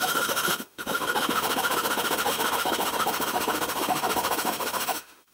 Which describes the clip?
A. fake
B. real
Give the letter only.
A